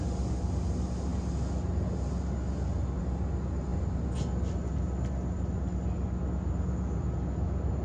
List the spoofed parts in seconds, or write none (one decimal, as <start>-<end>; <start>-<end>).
none